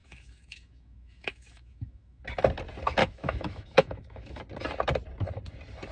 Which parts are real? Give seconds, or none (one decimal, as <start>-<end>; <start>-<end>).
2.2-3.0; 4.4-5.9